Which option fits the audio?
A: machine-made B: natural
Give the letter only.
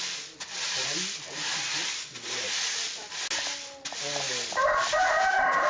B